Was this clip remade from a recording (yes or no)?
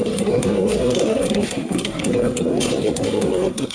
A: yes